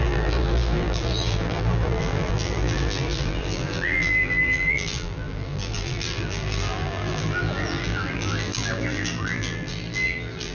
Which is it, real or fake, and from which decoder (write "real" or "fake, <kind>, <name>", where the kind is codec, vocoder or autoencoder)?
fake, vocoder, BigVGAN v2